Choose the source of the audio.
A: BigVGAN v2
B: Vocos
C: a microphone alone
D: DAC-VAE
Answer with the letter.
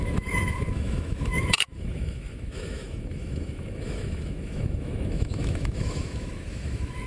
D